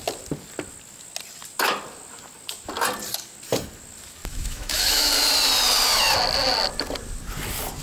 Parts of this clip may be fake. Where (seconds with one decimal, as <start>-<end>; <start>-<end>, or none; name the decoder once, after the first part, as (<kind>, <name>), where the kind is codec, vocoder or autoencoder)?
4.3-5.1 (autoencoder, DAC-VAE)